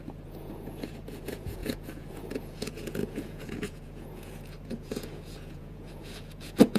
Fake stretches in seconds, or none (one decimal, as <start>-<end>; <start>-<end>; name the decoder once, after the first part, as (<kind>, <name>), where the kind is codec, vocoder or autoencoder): 0.0-6.8 (vocoder, Vocos)